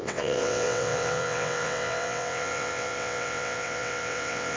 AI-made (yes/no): yes